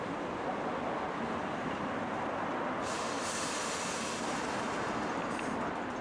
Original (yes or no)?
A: yes